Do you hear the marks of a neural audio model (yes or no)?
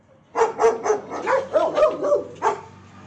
no